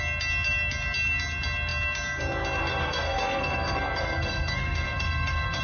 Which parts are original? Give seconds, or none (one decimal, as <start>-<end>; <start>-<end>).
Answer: 0.0-2.7